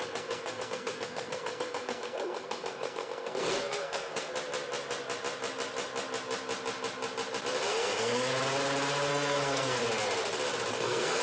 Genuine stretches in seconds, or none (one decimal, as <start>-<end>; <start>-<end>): 4.3-7.7; 8.3-9.1; 9.8-10.7